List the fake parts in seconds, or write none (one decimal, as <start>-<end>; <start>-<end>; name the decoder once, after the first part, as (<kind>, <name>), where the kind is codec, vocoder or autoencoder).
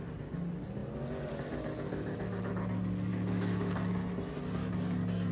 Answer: 3.1-3.7 (autoencoder, DAC-VAE)